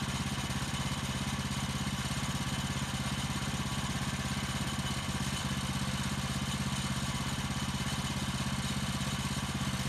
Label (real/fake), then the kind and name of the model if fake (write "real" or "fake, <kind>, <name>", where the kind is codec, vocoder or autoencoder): real